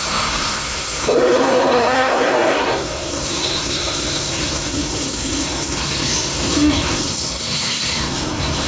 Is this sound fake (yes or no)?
yes